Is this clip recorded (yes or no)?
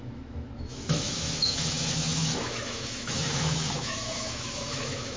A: no